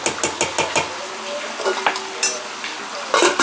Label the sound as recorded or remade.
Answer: recorded